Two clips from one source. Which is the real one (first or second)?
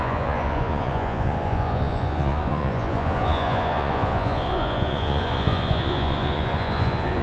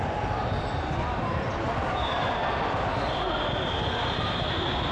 second